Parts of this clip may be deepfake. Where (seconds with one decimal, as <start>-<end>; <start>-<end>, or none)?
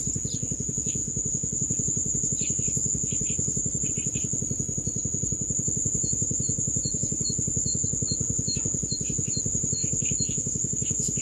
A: 9.8-11.2